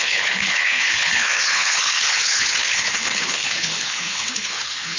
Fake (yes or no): yes